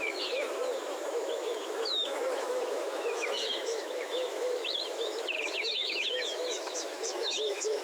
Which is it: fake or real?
fake